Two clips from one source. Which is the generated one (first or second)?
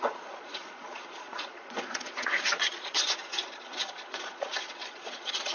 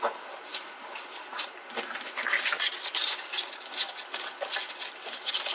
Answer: first